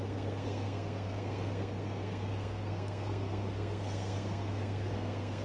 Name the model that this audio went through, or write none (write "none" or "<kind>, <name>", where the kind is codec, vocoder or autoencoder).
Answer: codec, SNAC